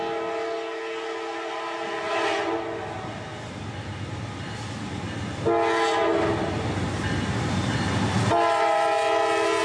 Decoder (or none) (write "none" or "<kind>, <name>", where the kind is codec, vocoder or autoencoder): none